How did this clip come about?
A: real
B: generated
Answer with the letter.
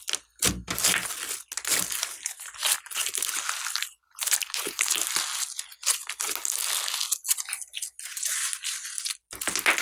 A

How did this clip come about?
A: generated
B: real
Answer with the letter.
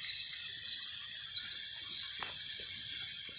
B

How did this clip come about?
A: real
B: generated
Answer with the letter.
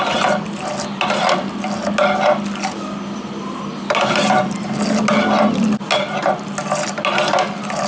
A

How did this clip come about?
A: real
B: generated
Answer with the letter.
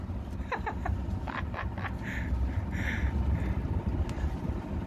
A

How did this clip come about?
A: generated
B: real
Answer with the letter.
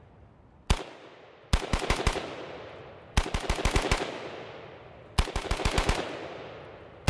B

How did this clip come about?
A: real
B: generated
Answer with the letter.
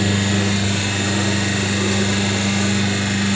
A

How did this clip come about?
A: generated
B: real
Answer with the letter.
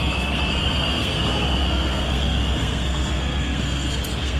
A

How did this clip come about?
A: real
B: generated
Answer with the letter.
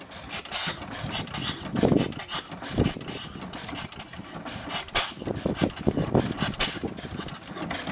A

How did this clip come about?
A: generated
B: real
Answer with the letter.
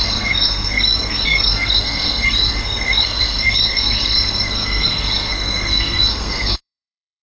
A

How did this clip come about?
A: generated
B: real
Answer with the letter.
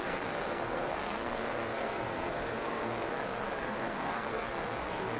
A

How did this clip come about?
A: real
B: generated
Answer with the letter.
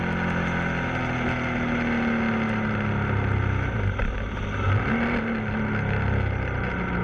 A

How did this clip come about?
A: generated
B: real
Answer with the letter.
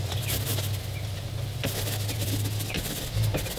B